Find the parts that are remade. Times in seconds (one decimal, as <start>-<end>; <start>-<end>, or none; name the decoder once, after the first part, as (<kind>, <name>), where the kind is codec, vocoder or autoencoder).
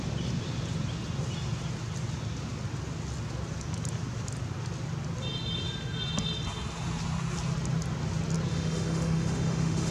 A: 8.5-9.9 (autoencoder, DAC-VAE)